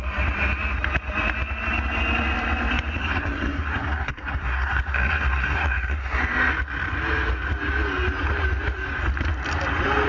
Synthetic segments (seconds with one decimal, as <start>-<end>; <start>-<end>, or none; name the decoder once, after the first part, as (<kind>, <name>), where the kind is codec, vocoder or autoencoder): 3.0-6.2 (codec, SNAC)